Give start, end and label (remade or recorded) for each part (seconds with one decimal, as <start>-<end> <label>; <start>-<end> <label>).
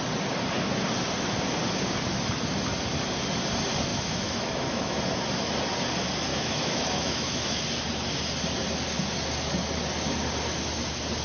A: 0.0-3.9 recorded; 3.9-5.0 remade; 5.0-6.3 recorded; 6.3-7.6 remade; 7.6-11.2 recorded